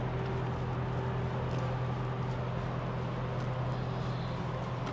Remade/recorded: recorded